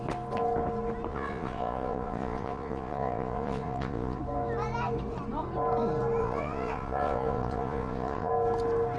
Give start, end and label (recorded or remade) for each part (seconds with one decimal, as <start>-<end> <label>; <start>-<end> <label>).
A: 0.0-1.1 recorded; 1.1-4.2 remade; 4.2-6.2 recorded; 6.2-8.3 remade; 8.3-9.0 recorded